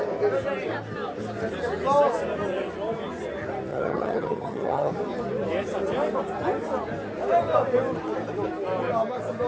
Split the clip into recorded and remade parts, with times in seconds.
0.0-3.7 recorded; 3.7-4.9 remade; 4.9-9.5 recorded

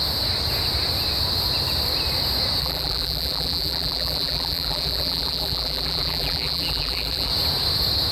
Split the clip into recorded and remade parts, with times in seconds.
0.0-2.6 recorded; 2.6-7.3 remade; 7.3-8.1 recorded

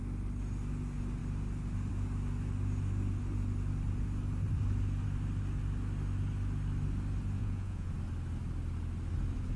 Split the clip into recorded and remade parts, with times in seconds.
0.0-7.4 recorded; 7.4-7.9 remade; 7.9-9.6 recorded

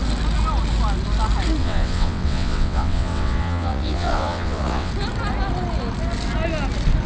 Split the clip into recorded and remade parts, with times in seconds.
0.0-1.6 recorded; 1.6-4.9 remade; 4.9-7.1 recorded

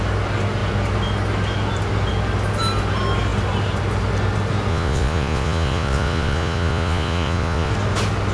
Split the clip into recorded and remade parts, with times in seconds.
0.0-4.7 recorded; 4.7-7.7 remade; 7.7-8.3 recorded